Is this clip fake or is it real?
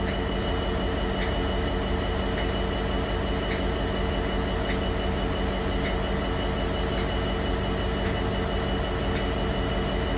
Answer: real